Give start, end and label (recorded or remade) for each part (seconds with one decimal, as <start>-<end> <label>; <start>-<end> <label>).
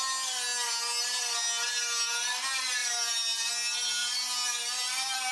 0.0-2.8 recorded; 2.8-3.5 remade; 3.5-4.0 recorded; 4.0-5.3 remade